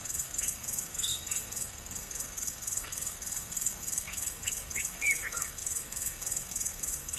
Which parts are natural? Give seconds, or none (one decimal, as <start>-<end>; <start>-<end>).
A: none